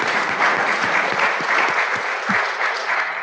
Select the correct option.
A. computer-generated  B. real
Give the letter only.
A